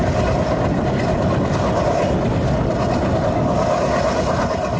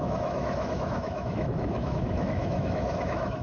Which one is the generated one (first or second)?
second